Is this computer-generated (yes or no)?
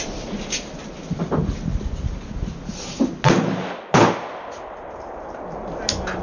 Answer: no